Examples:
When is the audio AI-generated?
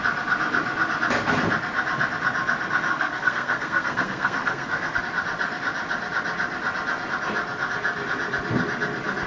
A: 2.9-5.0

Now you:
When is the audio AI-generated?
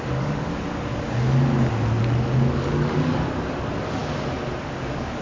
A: 0.0-0.5; 2.0-4.0; 4.6-5.2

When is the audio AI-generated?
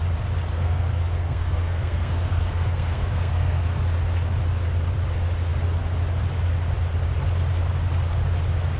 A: 0.5-3.8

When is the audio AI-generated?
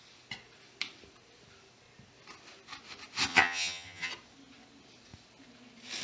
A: 3.3-4.1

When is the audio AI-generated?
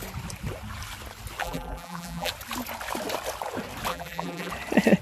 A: 1.4-2.3; 3.9-4.5